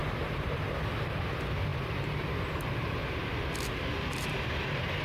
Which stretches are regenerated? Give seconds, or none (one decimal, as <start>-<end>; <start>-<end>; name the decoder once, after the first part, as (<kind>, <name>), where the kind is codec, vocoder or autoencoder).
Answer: 0.9-3.0 (vocoder, BigVGAN v2); 3.9-5.0